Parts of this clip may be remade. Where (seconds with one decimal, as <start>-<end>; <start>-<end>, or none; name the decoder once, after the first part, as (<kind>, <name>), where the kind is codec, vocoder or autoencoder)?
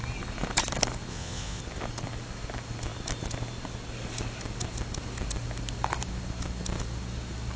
1.1-1.6 (vocoder, Vocos)